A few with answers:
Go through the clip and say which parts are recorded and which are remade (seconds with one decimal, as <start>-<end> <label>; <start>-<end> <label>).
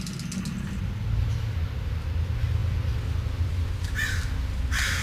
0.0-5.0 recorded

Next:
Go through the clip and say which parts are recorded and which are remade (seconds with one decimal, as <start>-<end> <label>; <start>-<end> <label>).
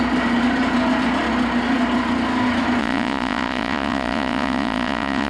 0.0-2.8 recorded; 2.8-5.3 remade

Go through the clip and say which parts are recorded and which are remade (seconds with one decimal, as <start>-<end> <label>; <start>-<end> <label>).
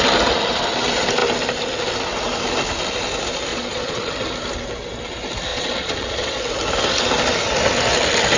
0.0-3.5 recorded; 3.5-4.1 remade; 4.1-5.5 recorded; 5.5-6.4 remade; 6.4-8.4 recorded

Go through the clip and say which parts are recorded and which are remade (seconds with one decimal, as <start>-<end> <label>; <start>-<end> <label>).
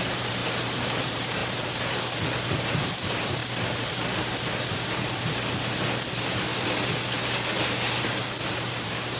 0.0-1.4 remade; 1.4-2.7 recorded; 2.7-3.4 remade; 3.4-8.4 recorded; 8.4-9.2 remade